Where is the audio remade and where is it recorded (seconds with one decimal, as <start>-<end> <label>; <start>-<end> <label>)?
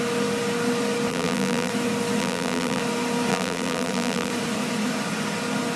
0.0-1.1 recorded; 1.1-1.7 remade; 1.7-2.2 recorded; 2.2-2.8 remade; 2.8-3.3 recorded; 3.3-4.3 remade; 4.3-5.8 recorded